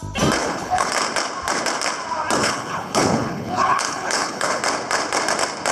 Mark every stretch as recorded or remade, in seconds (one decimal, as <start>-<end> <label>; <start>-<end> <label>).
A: 0.0-0.4 recorded; 0.4-0.9 remade; 0.9-2.4 recorded; 2.4-4.6 remade; 4.6-5.7 recorded